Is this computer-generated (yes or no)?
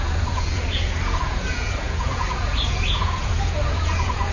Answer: yes